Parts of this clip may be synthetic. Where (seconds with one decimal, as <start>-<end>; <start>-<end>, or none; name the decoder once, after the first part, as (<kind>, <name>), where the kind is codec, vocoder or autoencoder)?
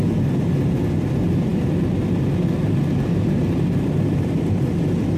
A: none